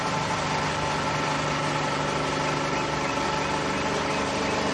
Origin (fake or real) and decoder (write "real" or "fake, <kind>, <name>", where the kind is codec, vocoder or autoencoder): real